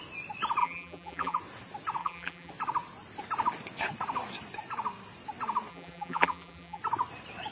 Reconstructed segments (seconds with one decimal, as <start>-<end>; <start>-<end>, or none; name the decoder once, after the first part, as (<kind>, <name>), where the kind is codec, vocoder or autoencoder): 0.6-1.4 (vocoder, BigVGAN v2); 2.0-2.5; 5.7-6.8